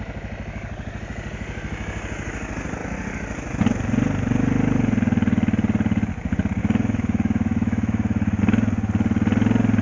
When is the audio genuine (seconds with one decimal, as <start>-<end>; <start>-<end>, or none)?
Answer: 0.0-6.6; 8.4-9.8